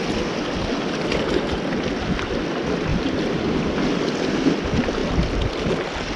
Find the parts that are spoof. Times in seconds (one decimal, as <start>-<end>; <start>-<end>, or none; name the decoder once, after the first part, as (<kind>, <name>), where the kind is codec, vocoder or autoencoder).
none